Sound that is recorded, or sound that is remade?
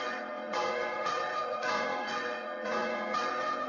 remade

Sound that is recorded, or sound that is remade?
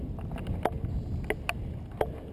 recorded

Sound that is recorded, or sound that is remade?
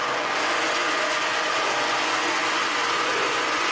remade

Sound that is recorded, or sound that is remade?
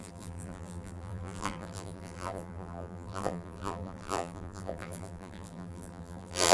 remade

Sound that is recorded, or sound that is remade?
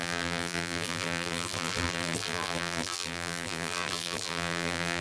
remade